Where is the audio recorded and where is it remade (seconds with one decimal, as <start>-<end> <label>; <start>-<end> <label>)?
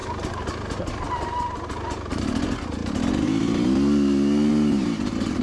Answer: 0.0-0.8 remade; 0.8-5.4 recorded